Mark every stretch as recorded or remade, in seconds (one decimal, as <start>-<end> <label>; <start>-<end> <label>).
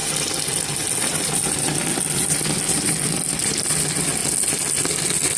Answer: 0.0-5.4 recorded